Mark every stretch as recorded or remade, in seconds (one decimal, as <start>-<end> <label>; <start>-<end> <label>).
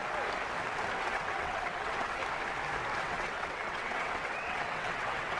0.0-1.0 recorded; 1.0-2.2 remade; 2.2-3.0 recorded; 3.0-5.4 remade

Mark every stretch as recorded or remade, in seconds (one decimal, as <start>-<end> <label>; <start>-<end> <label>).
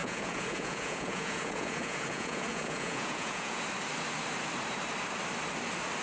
0.0-3.6 remade; 3.6-6.0 recorded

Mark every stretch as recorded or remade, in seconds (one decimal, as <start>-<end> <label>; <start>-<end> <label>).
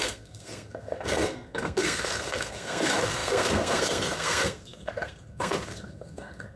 0.0-6.6 remade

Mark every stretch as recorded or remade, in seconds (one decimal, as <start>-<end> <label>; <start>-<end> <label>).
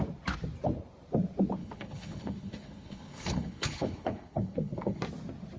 0.0-1.6 recorded; 1.6-5.0 remade; 5.0-5.6 recorded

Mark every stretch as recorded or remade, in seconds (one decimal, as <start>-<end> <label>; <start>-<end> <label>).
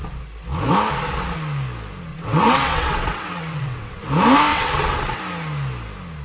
0.0-2.1 recorded; 2.1-4.0 remade; 4.0-4.5 recorded; 4.5-5.2 remade; 5.2-6.2 recorded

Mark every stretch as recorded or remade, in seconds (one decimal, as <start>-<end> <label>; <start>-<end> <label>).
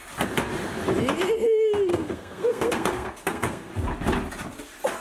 0.0-1.9 recorded; 1.9-3.7 remade; 3.7-5.0 recorded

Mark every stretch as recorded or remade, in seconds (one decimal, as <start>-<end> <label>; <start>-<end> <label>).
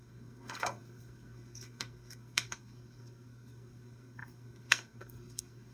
0.0-5.7 remade